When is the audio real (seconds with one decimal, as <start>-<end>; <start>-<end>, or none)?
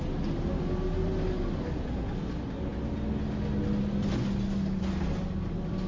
0.0-5.9